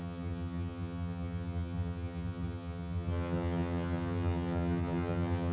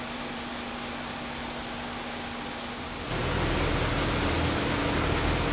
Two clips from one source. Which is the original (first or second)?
second